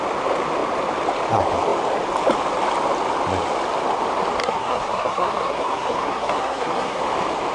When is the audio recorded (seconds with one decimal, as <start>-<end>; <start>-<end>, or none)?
0.0-4.4; 7.0-7.5